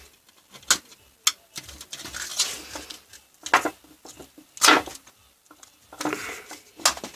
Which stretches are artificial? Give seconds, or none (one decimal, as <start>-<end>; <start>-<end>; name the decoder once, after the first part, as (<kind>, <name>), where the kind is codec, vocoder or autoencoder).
4.9-6.3 (vocoder, BigVGAN v2)